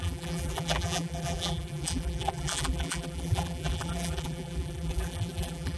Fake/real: fake